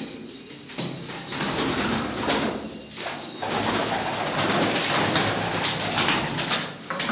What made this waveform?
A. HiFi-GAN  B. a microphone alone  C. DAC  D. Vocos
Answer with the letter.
B